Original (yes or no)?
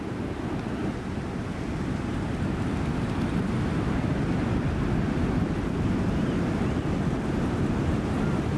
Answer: yes